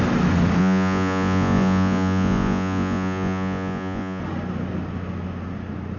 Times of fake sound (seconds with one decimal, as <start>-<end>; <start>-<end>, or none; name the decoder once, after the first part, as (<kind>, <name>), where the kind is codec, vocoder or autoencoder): 0.6-4.2 (vocoder, Vocos)